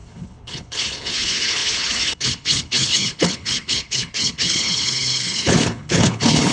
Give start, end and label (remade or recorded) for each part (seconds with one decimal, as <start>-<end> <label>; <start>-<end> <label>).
0.0-6.5 remade

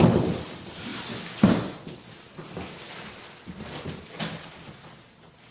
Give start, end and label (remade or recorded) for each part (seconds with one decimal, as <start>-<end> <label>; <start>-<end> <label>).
0.0-5.5 recorded

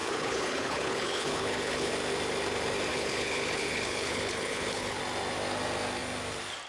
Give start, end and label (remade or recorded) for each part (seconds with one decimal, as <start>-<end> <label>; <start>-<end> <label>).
0.0-1.9 remade; 1.9-2.9 recorded; 2.9-5.0 remade; 5.0-6.7 recorded

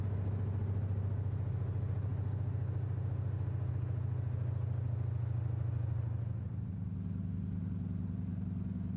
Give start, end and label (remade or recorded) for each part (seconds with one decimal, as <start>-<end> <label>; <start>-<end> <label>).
0.0-9.0 recorded

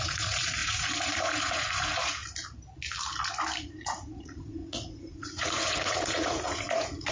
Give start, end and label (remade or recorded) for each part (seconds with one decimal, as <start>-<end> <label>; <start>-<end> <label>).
0.0-2.2 remade; 2.2-3.6 recorded; 3.6-7.1 remade